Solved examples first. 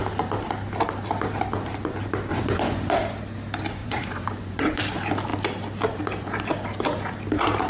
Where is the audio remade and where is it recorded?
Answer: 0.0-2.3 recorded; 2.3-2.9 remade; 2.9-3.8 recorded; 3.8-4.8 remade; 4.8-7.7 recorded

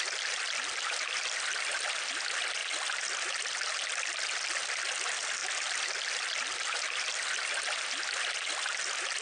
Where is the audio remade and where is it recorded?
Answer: 0.0-9.2 recorded

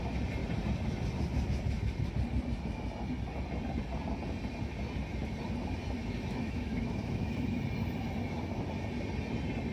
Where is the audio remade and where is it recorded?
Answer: 0.0-6.0 recorded; 6.0-7.6 remade; 7.6-9.7 recorded

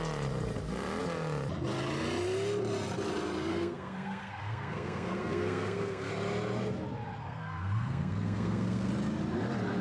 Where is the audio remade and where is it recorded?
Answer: 0.0-3.5 recorded; 3.5-6.1 remade; 6.1-7.2 recorded; 7.2-8.9 remade; 8.9-9.8 recorded

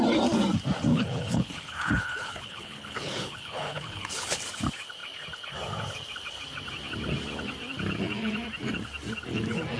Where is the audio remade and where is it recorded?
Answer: 0.0-0.9 recorded; 0.9-4.4 remade; 4.4-9.8 recorded

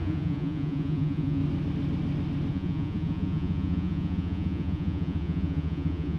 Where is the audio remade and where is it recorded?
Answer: 0.0-1.4 remade; 1.4-2.5 recorded; 2.5-6.2 remade